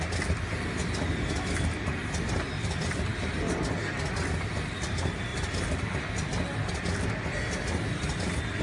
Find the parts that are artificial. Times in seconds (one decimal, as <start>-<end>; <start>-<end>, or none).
5.3-6.1